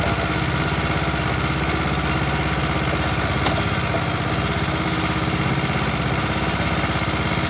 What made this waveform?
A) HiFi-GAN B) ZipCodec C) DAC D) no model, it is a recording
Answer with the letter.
D